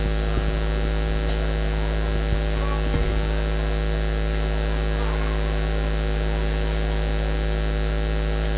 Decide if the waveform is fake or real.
real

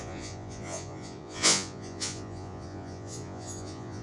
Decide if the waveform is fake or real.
fake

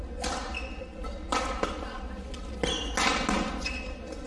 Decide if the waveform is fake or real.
real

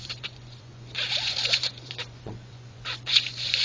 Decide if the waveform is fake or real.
fake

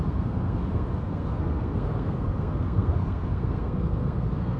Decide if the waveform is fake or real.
fake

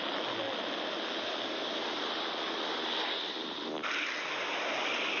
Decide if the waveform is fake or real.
real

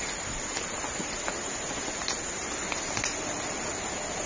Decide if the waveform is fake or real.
real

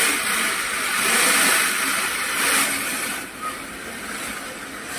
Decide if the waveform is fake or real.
real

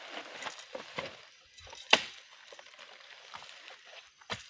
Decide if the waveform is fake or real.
fake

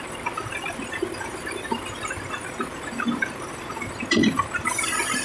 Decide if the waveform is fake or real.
real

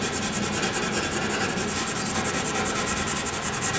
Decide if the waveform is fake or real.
real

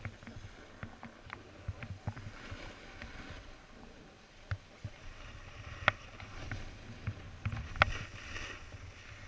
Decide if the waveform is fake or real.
real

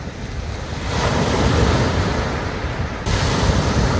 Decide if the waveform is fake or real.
real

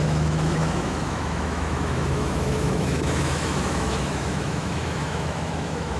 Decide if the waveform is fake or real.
fake